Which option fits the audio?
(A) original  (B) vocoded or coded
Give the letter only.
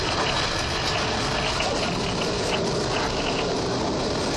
A